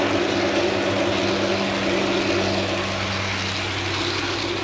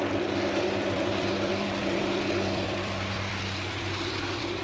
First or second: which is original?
first